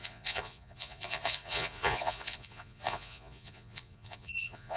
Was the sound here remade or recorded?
remade